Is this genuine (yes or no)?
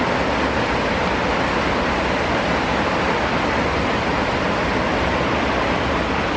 yes